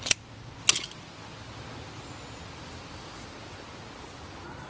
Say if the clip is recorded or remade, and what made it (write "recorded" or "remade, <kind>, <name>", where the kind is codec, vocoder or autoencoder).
recorded